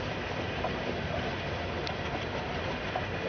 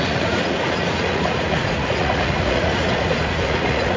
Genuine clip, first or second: first